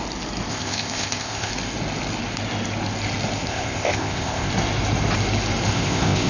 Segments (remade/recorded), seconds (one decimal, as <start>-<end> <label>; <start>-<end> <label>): 0.0-0.5 recorded; 0.5-1.5 remade; 1.5-3.5 recorded; 3.5-4.5 remade; 4.5-5.7 recorded; 5.7-6.3 remade